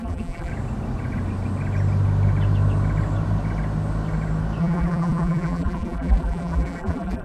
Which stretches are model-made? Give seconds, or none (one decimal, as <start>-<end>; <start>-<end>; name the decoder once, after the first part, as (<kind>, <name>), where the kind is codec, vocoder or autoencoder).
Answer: 0.0-0.5 (vocoder, BigVGAN v2); 4.6-7.2